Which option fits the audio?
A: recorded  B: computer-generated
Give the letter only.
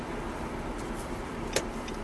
A